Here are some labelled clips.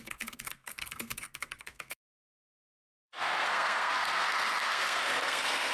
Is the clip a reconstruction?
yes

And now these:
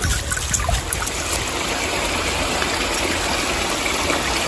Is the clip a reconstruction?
no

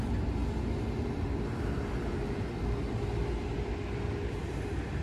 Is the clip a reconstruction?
no